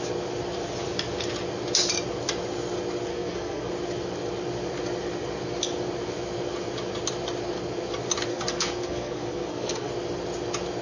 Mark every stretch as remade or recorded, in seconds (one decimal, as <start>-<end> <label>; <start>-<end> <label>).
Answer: 0.0-3.1 recorded; 3.1-3.7 remade; 3.7-8.3 recorded; 8.3-9.9 remade; 9.9-10.8 recorded